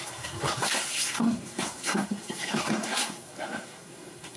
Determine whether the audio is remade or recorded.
remade